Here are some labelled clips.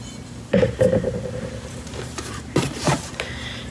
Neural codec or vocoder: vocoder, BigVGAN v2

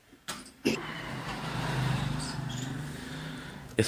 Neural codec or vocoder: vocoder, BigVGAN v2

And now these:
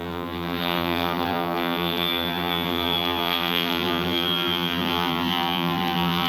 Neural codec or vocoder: vocoder, BigVGAN v2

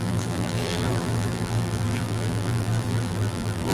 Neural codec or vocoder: vocoder, BigVGAN v2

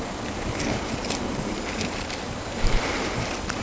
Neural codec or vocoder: vocoder, BigVGAN v2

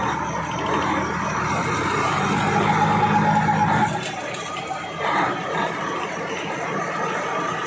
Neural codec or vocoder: none